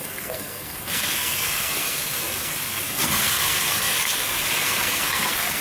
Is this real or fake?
fake